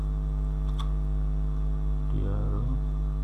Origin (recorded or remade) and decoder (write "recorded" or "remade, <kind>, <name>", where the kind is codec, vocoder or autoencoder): recorded